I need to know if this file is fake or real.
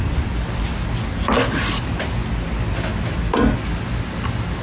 real